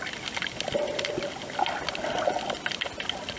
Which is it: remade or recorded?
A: recorded